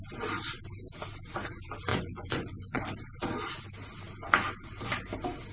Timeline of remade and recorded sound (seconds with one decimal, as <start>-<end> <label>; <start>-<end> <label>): 0.0-1.9 recorded; 1.9-2.8 remade; 2.8-5.5 recorded